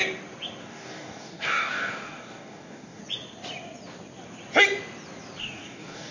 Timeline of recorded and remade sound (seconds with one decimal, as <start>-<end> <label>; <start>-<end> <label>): 0.0-0.6 recorded; 0.6-3.0 remade; 3.0-5.4 recorded; 5.4-6.1 remade